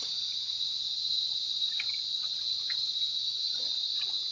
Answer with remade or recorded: recorded